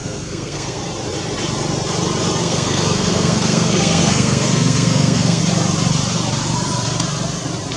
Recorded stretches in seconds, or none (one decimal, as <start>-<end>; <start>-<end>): 0.8-2.4; 5.4-7.8